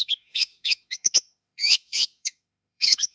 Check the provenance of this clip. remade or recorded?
remade